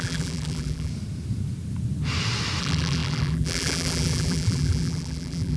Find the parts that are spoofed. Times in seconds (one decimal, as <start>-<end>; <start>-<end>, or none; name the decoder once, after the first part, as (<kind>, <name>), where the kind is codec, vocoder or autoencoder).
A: 0.0-0.9 (vocoder, BigVGAN v2); 2.6-5.6